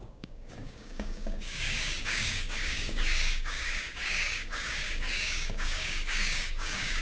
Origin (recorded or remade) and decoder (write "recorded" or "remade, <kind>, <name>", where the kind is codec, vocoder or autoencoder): remade, codec, DAC